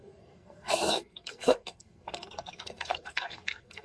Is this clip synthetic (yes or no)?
yes